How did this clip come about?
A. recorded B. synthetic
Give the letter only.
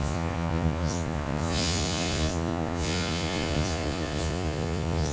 B